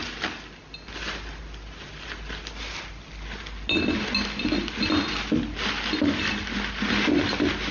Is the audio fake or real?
real